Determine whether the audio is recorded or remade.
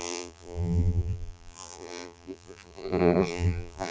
remade